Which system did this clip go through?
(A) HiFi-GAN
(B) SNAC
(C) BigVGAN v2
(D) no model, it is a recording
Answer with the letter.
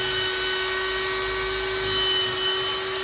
D